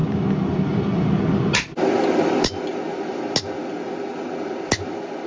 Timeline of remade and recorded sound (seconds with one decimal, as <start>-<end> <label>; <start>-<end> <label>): 0.0-5.3 recorded